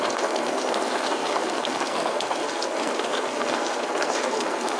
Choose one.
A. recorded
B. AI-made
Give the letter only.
B